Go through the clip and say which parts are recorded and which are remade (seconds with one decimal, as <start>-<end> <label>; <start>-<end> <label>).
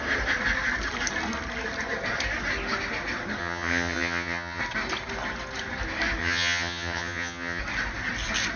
0.0-3.4 recorded; 3.4-4.6 remade; 4.6-6.2 recorded; 6.2-7.6 remade; 7.6-8.6 recorded